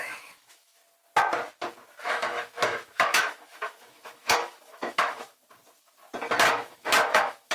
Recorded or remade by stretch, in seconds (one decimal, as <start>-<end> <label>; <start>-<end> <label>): 0.0-0.8 remade; 0.8-2.0 recorded; 2.0-5.4 remade; 5.4-6.5 recorded; 6.5-7.5 remade